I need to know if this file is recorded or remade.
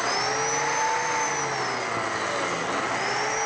recorded